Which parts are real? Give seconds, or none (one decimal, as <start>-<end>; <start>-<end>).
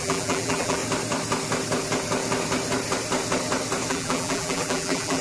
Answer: 0.8-3.9